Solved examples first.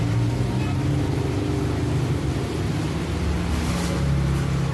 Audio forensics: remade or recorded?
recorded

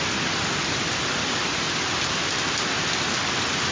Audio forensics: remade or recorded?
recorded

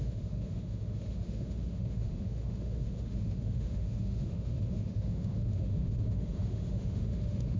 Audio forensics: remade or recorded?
remade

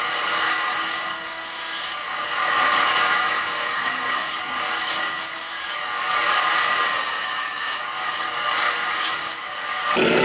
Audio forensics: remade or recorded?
remade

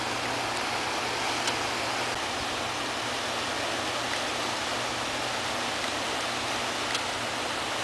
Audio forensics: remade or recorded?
recorded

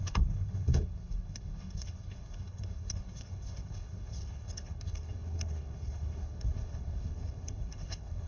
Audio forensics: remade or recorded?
remade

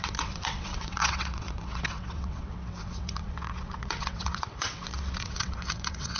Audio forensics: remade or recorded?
remade